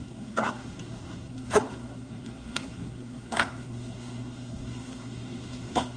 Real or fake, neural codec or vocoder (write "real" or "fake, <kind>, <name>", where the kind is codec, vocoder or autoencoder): fake, codec, SNAC